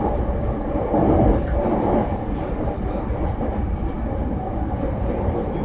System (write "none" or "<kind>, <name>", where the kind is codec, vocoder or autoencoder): none